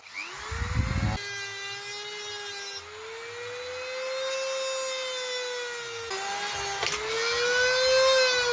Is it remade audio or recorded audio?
recorded